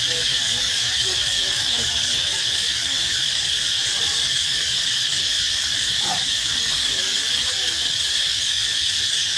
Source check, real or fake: fake